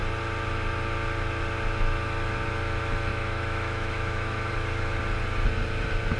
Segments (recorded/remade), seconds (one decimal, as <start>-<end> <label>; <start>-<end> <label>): 0.0-3.1 recorded; 3.1-4.5 remade; 4.5-6.2 recorded